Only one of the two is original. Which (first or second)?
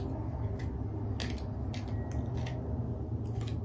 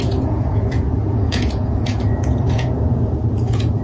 first